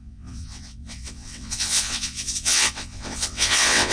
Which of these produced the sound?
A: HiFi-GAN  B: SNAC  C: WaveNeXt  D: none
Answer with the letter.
C